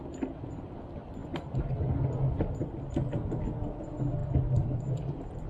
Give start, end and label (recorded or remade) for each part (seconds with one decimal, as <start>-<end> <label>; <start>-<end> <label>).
0.0-5.5 recorded